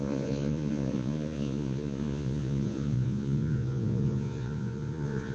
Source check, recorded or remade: remade